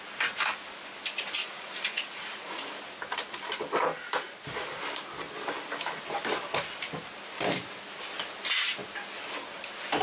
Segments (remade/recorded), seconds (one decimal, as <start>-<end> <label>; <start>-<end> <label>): 0.0-1.4 recorded; 1.4-2.7 remade; 2.7-10.0 recorded